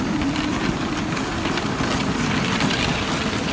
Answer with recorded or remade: recorded